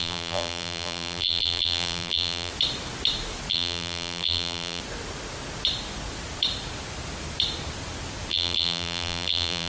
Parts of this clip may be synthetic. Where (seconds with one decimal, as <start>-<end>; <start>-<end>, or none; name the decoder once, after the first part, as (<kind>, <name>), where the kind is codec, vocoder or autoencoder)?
0.0-2.5 (vocoder, BigVGAN v2); 3.5-4.8; 8.3-9.7